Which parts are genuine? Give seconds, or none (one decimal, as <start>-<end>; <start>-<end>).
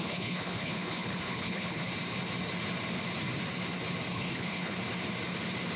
1.9-4.1; 4.8-5.8